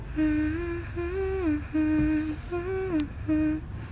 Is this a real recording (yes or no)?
yes